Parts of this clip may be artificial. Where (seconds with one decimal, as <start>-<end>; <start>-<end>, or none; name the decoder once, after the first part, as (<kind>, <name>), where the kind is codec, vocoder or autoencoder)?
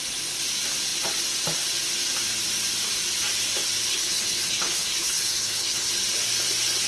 3.9-5.9 (codec, HILCodec)